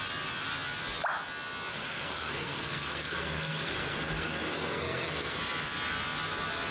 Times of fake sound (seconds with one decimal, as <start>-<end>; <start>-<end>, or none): 1.7-5.4